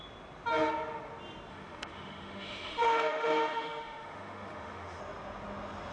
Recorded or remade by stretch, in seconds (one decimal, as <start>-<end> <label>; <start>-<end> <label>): 0.0-1.5 recorded; 1.5-5.0 remade; 5.0-5.9 recorded